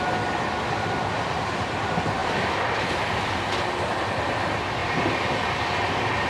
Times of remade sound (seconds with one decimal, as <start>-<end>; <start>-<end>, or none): none